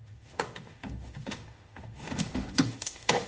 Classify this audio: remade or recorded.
remade